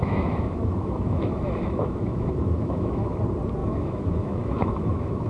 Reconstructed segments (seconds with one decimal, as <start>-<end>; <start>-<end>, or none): 0.0-3.2; 3.6-5.3